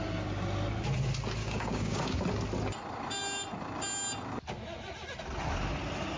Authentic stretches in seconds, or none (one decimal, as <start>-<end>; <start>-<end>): 0.0-1.4; 2.2-6.2